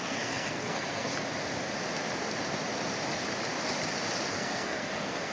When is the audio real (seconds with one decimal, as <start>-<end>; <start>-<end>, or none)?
1.1-4.3